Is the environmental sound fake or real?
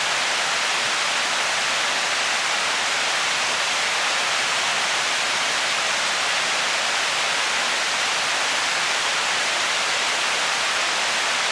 real